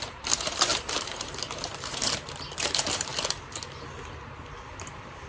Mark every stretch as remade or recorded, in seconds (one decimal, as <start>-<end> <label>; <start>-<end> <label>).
0.0-3.1 remade; 3.1-4.5 recorded; 4.5-5.3 remade